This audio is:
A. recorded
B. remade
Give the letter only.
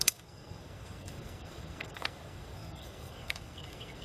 B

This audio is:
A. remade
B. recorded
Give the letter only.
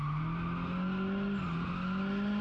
B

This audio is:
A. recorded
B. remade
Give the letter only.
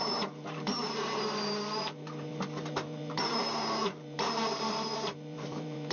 B